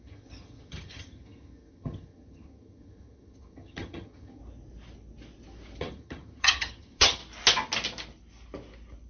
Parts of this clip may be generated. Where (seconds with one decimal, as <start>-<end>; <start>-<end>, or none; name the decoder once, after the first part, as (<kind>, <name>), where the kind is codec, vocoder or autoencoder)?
0.0-4.4 (vocoder, HiFi-GAN); 5.8-7.2

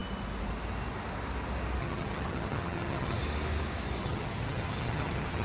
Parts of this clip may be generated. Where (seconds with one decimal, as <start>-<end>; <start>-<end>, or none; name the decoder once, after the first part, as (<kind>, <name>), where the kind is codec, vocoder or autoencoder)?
1.8-3.2 (vocoder, HiFi-GAN); 4.0-5.4

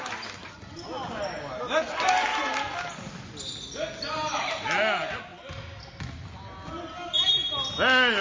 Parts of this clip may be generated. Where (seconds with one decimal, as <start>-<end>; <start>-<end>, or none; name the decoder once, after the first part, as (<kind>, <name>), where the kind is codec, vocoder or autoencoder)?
none

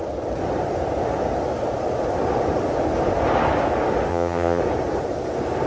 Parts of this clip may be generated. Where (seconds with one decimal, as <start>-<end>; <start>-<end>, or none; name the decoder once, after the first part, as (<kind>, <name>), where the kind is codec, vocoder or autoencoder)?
4.1-4.6 (vocoder, HiFi-GAN)

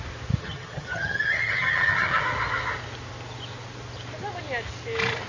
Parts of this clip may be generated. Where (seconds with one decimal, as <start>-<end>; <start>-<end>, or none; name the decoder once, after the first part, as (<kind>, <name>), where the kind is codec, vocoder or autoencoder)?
0.4-2.2 (vocoder, HiFi-GAN)

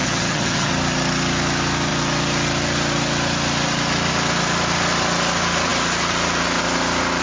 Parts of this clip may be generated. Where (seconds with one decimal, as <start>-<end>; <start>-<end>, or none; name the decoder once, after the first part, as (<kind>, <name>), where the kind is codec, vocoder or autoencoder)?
0.0-0.7 (vocoder, HiFi-GAN)